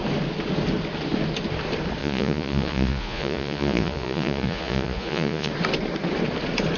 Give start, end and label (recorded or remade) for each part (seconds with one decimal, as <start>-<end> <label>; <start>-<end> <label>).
0.0-2.0 recorded; 2.0-5.5 remade; 5.5-6.8 recorded